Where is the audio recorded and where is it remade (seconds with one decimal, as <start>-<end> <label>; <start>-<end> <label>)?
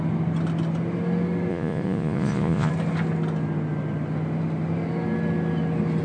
0.0-1.5 recorded; 1.5-2.7 remade; 2.7-6.0 recorded